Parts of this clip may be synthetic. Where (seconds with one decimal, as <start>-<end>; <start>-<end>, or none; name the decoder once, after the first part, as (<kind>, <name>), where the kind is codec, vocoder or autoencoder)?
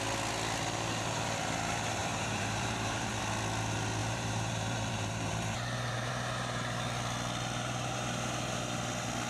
2.0-3.2 (vocoder, BigVGAN v2); 4.0-6.1